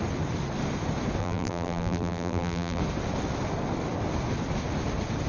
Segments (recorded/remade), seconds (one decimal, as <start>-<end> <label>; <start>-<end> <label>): 0.0-1.2 recorded; 1.2-2.8 remade; 2.8-5.3 recorded